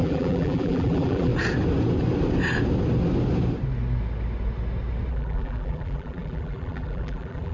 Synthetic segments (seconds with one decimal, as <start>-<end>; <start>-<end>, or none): 0.0-1.3; 5.1-7.5